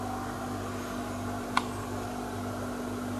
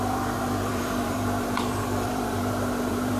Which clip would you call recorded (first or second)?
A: first